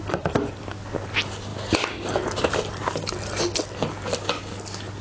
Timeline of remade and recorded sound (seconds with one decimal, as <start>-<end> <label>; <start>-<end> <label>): 0.0-5.0 recorded